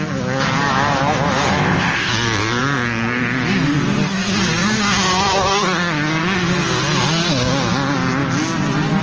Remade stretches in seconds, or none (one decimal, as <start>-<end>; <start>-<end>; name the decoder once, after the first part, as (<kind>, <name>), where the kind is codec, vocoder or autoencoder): 1.6-2.1 (codec, ZipCodec)